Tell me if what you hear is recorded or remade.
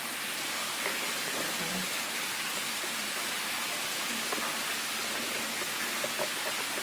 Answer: recorded